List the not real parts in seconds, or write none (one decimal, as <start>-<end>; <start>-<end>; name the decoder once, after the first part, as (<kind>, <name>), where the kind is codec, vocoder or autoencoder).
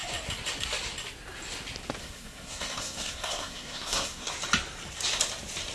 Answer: 2.0-4.3 (codec, SNAC)